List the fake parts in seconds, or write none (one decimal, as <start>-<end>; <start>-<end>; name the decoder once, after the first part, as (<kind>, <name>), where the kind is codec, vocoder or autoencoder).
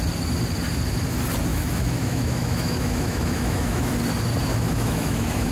1.5-3.9 (autoencoder, DAC-VAE); 4.5-5.5